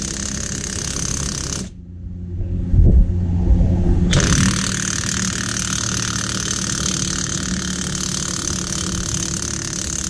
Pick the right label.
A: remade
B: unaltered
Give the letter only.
B